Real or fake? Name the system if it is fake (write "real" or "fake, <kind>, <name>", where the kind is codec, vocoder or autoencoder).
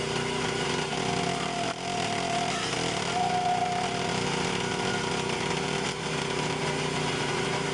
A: real